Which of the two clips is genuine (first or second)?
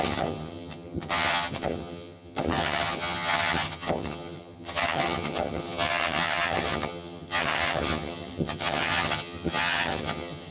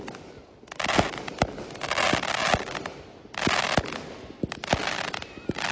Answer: second